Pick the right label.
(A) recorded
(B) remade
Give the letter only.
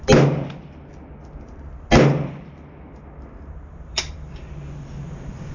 A